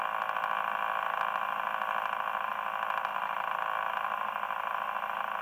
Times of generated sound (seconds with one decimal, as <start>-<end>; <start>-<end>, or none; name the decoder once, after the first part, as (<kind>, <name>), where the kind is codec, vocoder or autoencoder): none